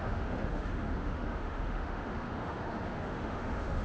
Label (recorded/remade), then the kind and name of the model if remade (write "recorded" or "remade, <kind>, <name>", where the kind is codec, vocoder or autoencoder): remade, autoencoder, DAC-VAE